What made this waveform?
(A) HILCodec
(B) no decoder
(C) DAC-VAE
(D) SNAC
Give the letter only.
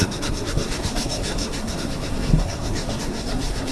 D